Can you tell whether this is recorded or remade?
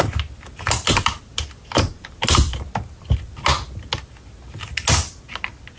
recorded